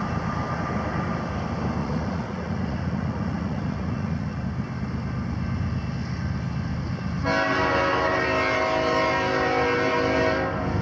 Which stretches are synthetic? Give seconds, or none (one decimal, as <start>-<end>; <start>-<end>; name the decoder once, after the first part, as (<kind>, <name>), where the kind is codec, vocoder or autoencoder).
1.8-4.4 (vocoder, Vocos)

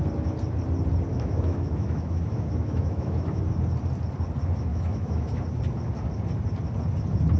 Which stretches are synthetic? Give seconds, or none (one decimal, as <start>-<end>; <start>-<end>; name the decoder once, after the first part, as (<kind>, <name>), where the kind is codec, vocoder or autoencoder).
1.1-3.4 (autoencoder, DAC-VAE); 4.7-5.4

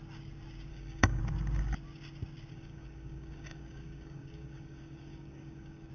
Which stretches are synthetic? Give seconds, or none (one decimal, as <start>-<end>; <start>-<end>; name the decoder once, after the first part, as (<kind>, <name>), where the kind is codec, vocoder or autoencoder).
0.7-1.2 (codec, DAC); 2.5-5.9

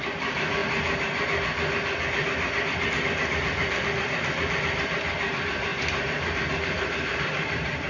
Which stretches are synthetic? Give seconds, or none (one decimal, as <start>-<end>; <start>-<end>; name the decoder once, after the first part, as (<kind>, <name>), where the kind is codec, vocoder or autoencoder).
0.0-0.6 (vocoder, BigVGAN v2); 2.9-5.7; 6.5-7.9

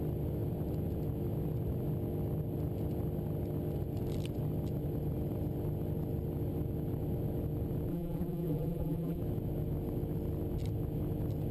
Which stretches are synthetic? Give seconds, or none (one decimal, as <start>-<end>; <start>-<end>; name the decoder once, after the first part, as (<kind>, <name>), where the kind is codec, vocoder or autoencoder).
7.9-9.2 (vocoder, BigVGAN v2)

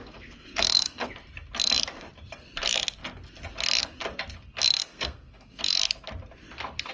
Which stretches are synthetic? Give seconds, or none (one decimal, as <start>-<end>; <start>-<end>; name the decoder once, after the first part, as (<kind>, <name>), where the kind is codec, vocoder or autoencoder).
0.0-1.1 (codec, SNAC); 4.8-5.6

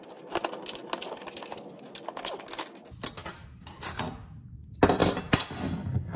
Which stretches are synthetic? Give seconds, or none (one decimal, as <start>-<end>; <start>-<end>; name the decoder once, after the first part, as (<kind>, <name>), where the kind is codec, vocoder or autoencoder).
none